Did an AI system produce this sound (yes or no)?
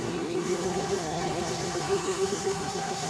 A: yes